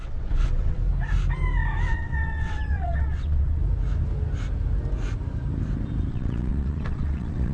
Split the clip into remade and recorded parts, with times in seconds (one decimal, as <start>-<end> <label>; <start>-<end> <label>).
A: 0.0-0.8 remade; 0.8-1.9 recorded; 1.9-3.6 remade; 3.6-6.1 recorded; 6.1-7.5 remade